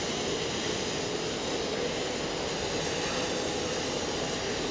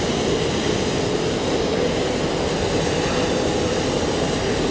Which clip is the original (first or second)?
first